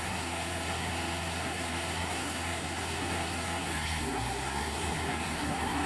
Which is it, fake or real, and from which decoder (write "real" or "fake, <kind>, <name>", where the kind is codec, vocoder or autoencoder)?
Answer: fake, codec, SNAC